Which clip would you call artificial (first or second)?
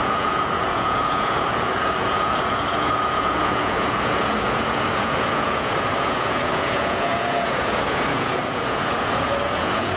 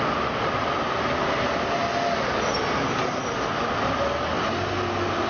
first